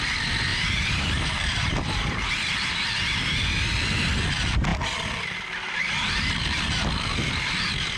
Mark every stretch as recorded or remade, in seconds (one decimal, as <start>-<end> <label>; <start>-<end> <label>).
0.0-0.5 recorded; 0.5-2.3 remade; 2.3-8.0 recorded